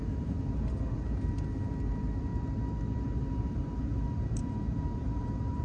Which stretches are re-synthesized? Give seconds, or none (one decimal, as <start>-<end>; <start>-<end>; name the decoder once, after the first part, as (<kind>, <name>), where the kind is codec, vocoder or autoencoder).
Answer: 0.0-2.3 (vocoder, BigVGAN v2); 3.0-5.6